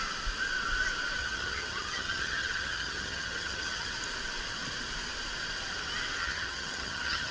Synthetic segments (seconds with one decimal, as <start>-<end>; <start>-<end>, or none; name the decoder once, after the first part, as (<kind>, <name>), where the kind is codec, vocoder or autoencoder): 1.2-3.9 (vocoder, HiFi-GAN); 6.2-7.3